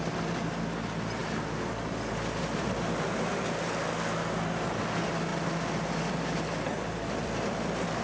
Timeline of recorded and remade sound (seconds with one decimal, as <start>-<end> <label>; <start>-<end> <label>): 0.0-8.0 recorded